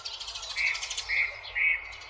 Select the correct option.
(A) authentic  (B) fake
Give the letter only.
A